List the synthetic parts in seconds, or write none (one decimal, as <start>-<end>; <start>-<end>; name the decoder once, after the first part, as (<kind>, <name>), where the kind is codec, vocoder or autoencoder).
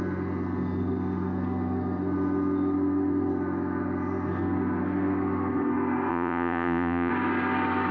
6.1-7.1 (vocoder, Vocos)